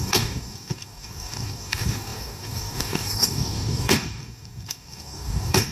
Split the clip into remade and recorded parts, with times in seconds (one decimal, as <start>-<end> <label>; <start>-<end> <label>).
0.0-5.7 remade